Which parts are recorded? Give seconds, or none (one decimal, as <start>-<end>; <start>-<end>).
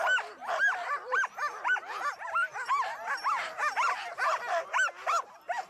0.0-0.4; 2.7-3.6; 4.4-5.7